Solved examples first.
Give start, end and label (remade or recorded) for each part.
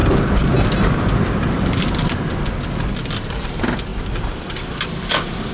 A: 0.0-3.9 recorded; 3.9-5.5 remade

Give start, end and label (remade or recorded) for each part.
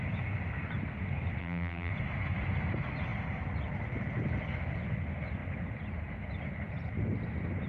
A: 0.0-1.4 recorded; 1.4-1.9 remade; 1.9-7.7 recorded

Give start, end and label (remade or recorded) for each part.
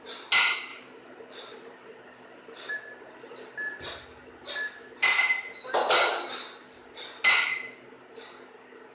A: 0.0-0.7 recorded; 0.7-2.7 remade; 2.7-8.9 recorded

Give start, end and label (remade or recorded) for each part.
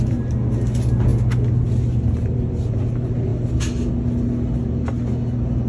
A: 0.0-5.7 recorded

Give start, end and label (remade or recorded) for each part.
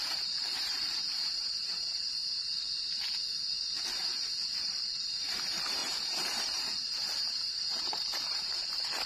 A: 0.0-2.2 remade; 2.2-4.5 recorded; 4.5-9.1 remade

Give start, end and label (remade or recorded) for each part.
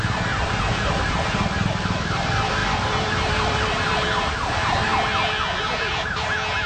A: 0.0-4.9 remade; 4.9-5.6 recorded; 5.6-6.7 remade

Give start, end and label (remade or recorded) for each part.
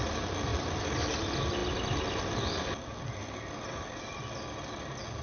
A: 0.0-0.5 recorded; 0.5-1.2 remade; 1.2-5.2 recorded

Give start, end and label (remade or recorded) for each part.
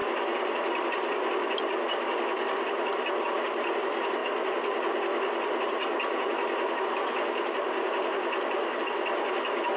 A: 0.0-9.8 recorded